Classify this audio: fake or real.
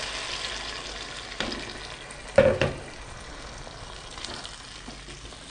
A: real